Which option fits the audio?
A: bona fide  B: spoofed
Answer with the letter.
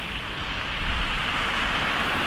A